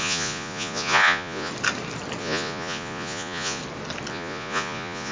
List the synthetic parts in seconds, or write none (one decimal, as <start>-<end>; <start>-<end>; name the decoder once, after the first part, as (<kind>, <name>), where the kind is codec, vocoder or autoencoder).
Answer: 0.0-1.5 (vocoder, Vocos); 2.2-3.6; 4.1-5.1